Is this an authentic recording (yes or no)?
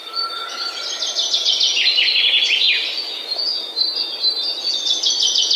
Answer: yes